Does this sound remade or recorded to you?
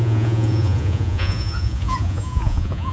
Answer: remade